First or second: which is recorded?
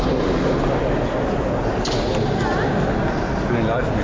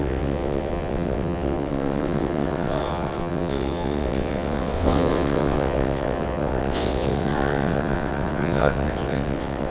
first